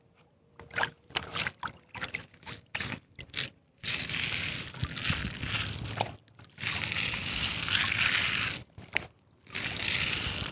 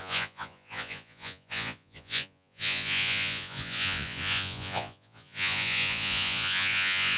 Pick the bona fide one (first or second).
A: first